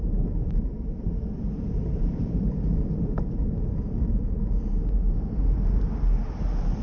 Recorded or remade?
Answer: remade